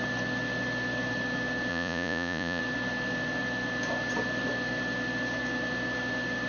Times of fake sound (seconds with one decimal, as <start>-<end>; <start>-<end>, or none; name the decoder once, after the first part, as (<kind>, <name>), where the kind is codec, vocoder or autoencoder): 1.7-2.6 (vocoder, Vocos)